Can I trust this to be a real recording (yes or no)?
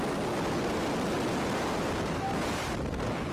yes